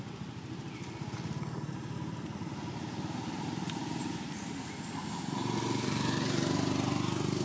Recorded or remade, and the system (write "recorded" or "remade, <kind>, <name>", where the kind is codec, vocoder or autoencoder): recorded